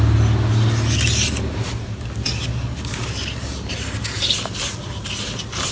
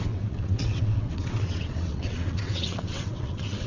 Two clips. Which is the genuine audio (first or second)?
first